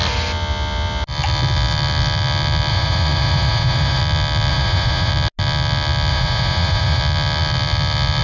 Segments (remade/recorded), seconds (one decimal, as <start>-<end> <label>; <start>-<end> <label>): 0.0-2.7 recorded; 2.7-4.0 remade; 4.0-4.5 recorded; 4.5-5.1 remade; 5.1-6.1 recorded; 6.1-7.0 remade; 7.0-8.2 recorded